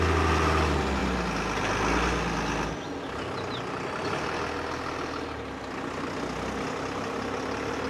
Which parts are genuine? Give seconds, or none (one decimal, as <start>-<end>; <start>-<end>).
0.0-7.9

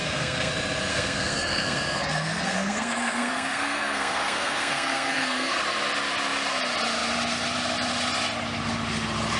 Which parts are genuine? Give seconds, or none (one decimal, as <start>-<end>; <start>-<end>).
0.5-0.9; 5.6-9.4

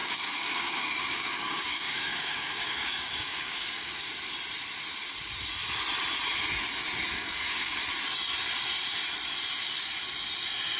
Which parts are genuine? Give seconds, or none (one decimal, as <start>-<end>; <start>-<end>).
4.1-7.2; 7.8-10.8